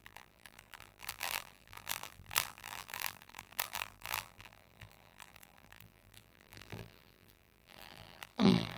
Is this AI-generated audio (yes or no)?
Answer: yes